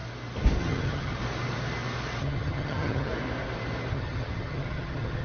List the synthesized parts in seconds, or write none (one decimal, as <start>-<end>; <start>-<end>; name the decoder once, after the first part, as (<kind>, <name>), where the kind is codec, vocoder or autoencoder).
0.6-1.2 (vocoder, HiFi-GAN); 2.2-3.1; 3.9-5.2